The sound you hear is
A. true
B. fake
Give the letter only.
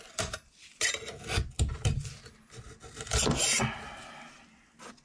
A